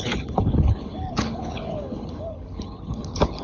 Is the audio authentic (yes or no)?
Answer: no